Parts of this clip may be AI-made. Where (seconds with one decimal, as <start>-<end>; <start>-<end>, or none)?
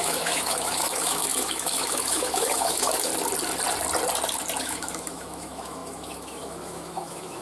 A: 0.0-3.1; 4.6-7.4